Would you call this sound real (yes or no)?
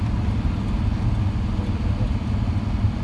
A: yes